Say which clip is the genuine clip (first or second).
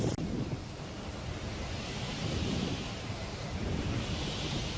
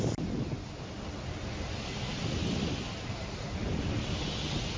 second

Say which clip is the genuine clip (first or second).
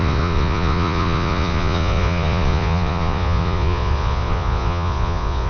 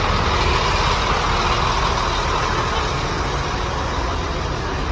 second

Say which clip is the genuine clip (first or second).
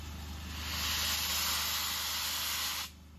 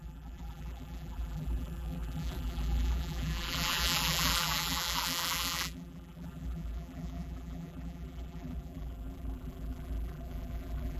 first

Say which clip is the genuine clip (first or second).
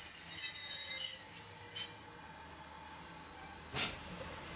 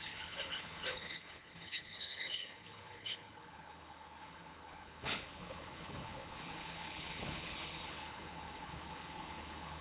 first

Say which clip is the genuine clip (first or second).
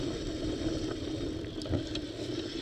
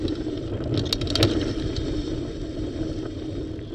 second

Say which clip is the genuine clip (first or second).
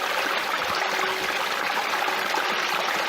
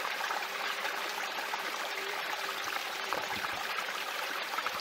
first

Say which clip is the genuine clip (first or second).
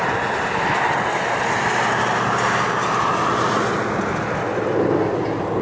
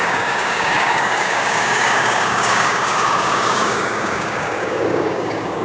first